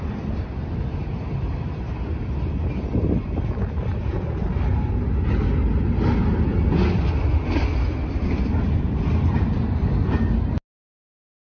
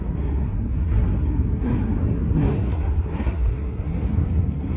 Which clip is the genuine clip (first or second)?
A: first